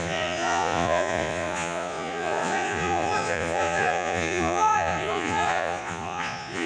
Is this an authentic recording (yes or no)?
no